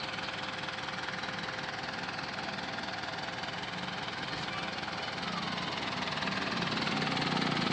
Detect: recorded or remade recorded